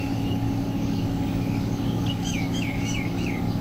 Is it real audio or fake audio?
fake